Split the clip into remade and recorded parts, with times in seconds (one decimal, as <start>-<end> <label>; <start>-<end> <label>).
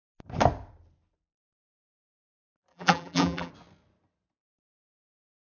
0.0-2.7 recorded; 2.7-3.5 remade; 3.5-5.4 recorded